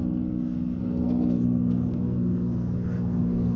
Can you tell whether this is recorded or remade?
remade